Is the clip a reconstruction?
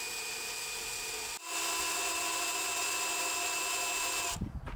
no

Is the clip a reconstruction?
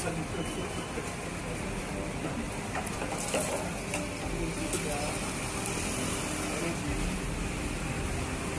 no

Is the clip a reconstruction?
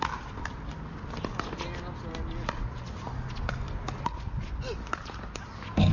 no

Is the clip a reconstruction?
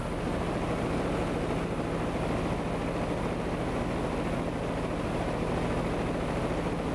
no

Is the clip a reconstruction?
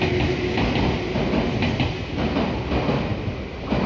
no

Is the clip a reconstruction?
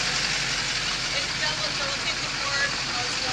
no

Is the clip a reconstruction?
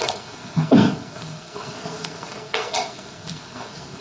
yes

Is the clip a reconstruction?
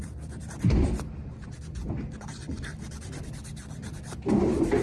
yes